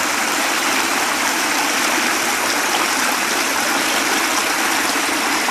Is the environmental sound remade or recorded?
recorded